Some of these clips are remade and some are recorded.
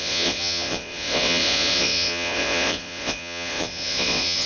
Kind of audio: remade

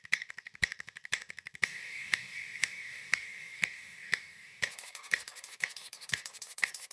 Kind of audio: remade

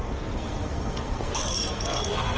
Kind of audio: remade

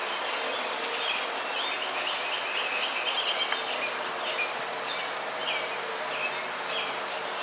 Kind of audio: recorded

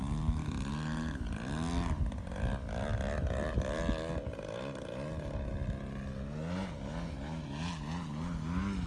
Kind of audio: recorded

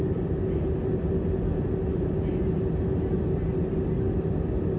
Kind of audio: recorded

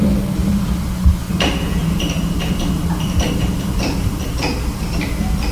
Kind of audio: remade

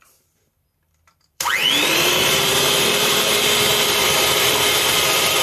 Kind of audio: remade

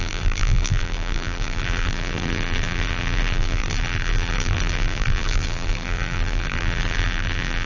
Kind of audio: remade